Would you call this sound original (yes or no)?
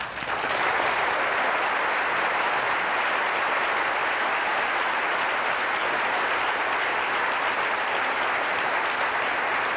yes